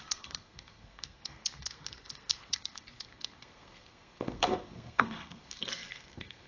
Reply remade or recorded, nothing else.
remade